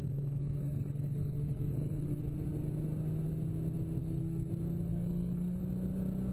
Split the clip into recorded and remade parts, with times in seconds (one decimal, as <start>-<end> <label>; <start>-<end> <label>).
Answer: 0.0-2.2 remade; 2.2-4.0 recorded; 4.0-4.5 remade; 4.5-4.9 recorded; 4.9-5.6 remade; 5.6-6.3 recorded